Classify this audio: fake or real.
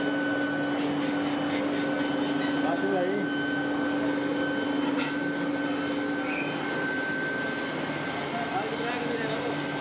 real